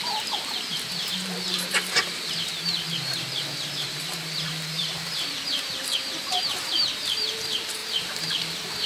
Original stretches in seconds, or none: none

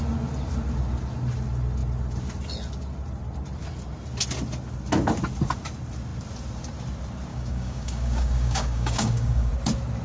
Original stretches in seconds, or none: 0.0-7.3; 9.5-10.0

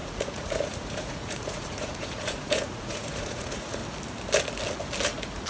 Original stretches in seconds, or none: 3.8-5.5

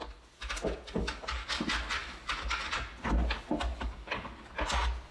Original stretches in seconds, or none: 0.0-1.0; 1.6-2.0; 2.7-3.7; 4.5-5.1

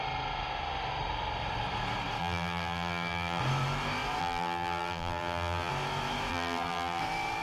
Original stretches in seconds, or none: 0.0-2.2; 3.4-4.2; 5.7-6.3; 7.0-7.4

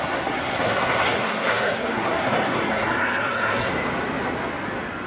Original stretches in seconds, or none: 3.7-5.1

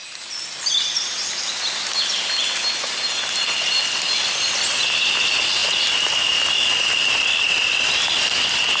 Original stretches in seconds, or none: 0.0-8.8